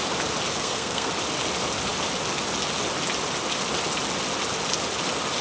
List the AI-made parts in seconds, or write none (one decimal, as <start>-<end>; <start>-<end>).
0.5-1.1